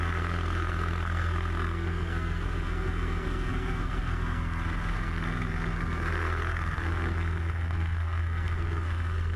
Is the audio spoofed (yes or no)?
yes